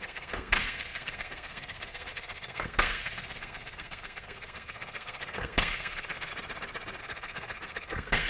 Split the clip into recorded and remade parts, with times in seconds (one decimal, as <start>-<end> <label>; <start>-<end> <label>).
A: 0.0-6.3 remade; 6.3-7.0 recorded; 7.0-8.3 remade